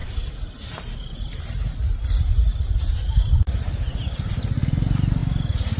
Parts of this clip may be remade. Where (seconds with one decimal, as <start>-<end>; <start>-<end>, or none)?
0.0-2.1; 2.5-4.3; 5.2-5.8